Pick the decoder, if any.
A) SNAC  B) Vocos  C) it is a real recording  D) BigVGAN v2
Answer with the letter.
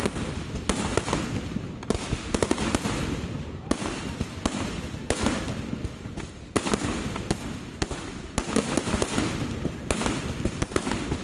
C